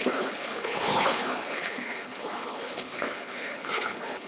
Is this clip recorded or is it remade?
remade